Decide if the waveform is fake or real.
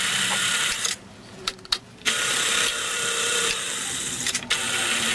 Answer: fake